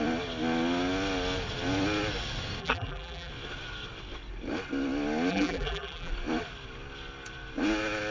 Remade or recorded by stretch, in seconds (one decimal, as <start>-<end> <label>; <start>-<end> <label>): 0.0-2.6 recorded; 2.6-3.3 remade; 3.3-5.3 recorded; 5.3-6.1 remade; 6.1-8.1 recorded